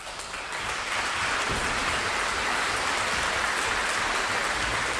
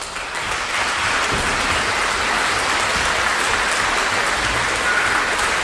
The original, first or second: second